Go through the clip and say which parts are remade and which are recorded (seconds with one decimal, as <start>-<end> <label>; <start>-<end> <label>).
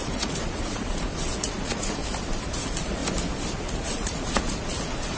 0.0-2.0 remade; 2.0-2.5 recorded; 2.5-3.0 remade; 3.0-3.5 recorded; 3.5-5.2 remade